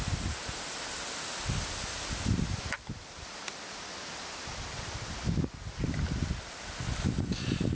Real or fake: real